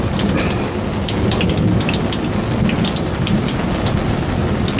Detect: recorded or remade recorded